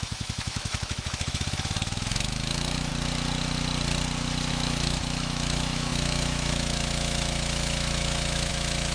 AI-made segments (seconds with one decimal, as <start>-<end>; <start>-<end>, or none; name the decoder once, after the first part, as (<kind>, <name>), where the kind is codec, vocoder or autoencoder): 0.0-2.9 (autoencoder, DAC-VAE); 4.5-8.9